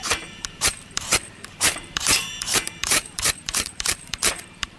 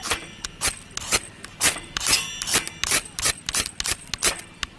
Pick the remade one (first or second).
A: first